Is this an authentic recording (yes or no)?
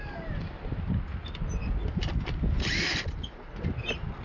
yes